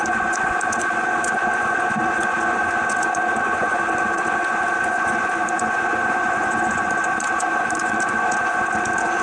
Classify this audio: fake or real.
fake